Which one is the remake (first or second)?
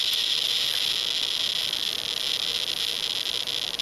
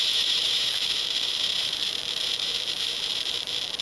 second